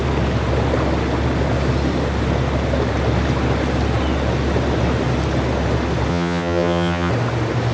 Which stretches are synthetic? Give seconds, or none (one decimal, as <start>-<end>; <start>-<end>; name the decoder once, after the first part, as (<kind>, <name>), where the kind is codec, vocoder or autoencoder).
6.1-7.1 (vocoder, HiFi-GAN)